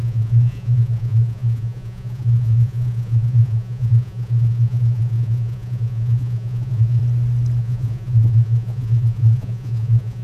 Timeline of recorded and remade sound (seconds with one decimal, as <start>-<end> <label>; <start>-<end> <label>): 0.0-7.0 remade; 7.0-7.6 recorded; 7.6-10.2 remade